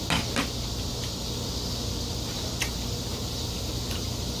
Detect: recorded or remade recorded